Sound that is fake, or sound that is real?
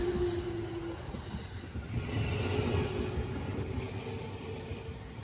real